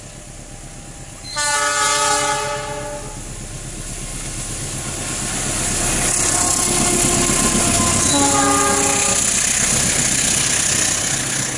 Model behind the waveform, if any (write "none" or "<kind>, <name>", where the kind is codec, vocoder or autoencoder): none